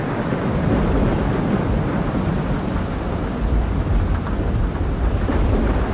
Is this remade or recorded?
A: recorded